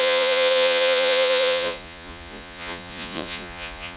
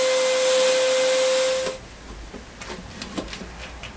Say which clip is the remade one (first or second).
first